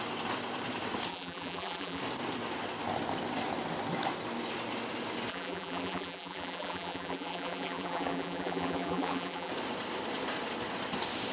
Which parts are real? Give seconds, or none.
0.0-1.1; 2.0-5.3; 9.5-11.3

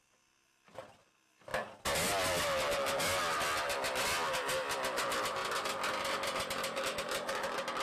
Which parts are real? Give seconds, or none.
0.0-7.8

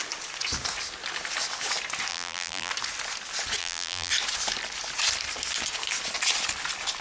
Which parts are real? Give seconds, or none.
0.0-2.1; 2.7-3.6; 4.1-7.0

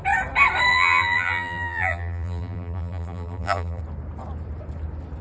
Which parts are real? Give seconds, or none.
0.0-0.7; 3.8-5.2

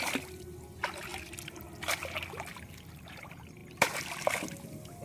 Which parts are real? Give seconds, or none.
0.0-5.0

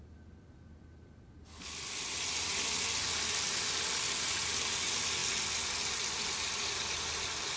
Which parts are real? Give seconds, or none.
0.0-7.6